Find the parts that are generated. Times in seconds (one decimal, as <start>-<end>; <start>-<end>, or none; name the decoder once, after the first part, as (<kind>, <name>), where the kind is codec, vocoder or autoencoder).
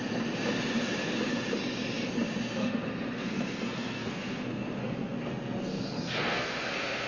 2.6-7.1 (codec, SNAC)